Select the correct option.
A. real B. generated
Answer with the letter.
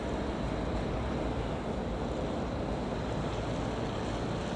A